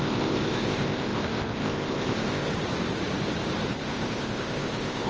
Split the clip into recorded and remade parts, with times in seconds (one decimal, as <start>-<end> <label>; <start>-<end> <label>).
0.0-2.5 remade; 2.5-3.8 recorded; 3.8-5.1 remade